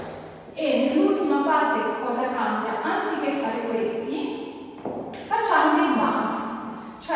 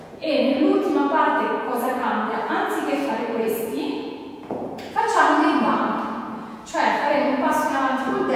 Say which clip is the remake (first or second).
second